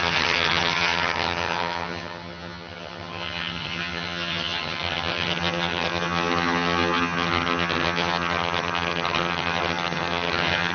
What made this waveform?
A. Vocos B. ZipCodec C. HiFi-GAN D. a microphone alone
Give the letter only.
C